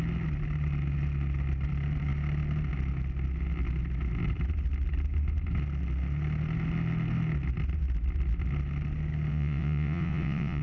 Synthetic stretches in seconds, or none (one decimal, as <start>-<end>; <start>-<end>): 9.3-10.6